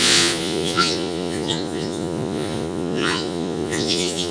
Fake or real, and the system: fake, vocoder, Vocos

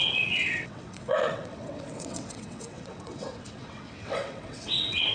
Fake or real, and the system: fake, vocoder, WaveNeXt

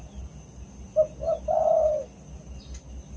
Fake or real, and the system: real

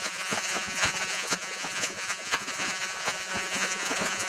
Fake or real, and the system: fake, vocoder, Vocos